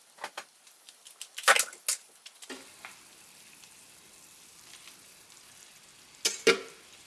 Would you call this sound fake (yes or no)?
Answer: no